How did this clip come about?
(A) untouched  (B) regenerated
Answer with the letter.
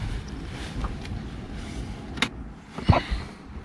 A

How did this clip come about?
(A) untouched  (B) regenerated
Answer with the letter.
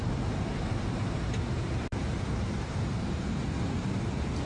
B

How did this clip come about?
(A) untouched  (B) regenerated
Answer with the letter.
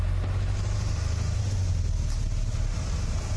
A